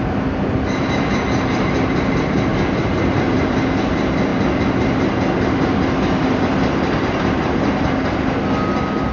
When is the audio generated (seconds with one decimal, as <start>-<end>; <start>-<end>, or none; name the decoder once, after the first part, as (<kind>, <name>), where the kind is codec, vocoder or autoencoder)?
none